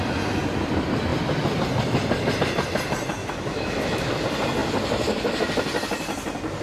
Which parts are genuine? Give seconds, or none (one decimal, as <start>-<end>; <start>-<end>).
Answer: 0.0-3.2; 4.1-6.6